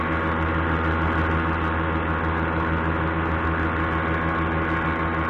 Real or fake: real